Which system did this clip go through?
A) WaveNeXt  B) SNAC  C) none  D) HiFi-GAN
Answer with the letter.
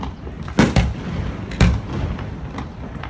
C